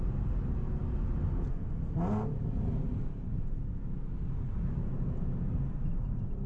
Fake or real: real